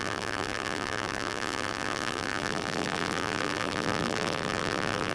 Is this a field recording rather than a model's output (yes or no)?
no